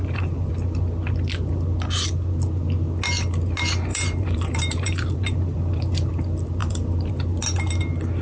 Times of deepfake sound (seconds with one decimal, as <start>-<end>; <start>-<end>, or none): 0.0-0.5; 3.9-6.1; 6.6-7.1